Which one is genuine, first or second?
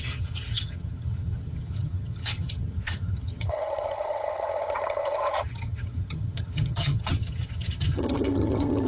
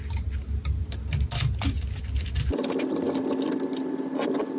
second